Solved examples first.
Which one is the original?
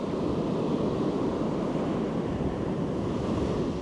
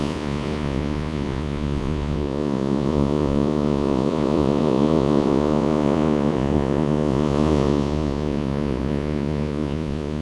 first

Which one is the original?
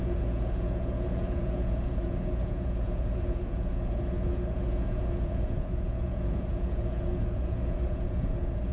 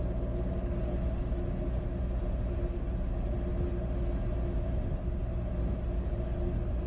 second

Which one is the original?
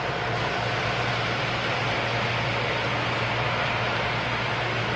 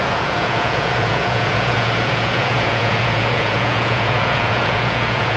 first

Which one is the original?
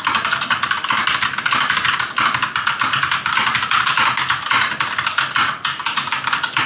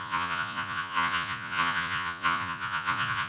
first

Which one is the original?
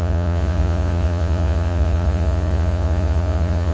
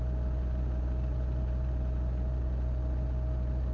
second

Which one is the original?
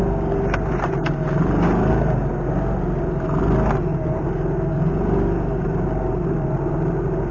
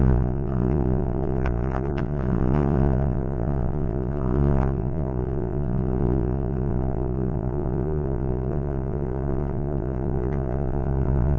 first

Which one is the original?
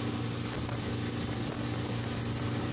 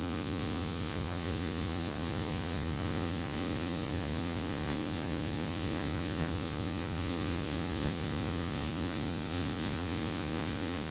first